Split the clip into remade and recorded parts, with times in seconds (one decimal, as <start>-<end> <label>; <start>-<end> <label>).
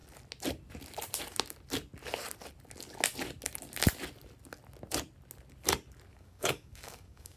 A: 0.0-6.1 recorded; 6.1-7.4 remade